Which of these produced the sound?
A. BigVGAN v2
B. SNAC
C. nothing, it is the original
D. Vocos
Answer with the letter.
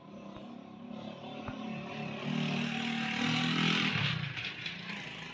C